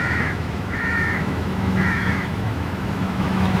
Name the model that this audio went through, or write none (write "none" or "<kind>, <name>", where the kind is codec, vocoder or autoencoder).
autoencoder, DAC-VAE